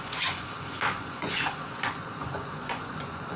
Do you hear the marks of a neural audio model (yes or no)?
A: yes